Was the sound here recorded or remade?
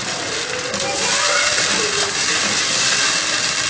recorded